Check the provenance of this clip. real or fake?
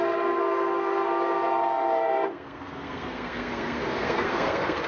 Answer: fake